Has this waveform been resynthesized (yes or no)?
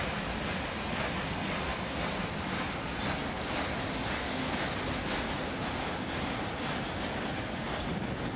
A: no